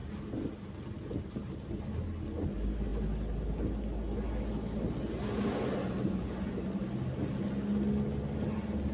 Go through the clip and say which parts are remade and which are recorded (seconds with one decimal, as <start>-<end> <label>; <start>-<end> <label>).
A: 0.0-8.9 recorded